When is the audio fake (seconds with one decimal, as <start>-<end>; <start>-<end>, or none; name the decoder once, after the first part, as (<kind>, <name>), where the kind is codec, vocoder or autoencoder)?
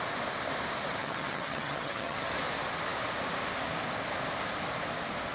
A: 1.0-2.3 (vocoder, HiFi-GAN)